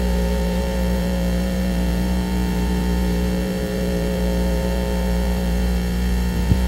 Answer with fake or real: fake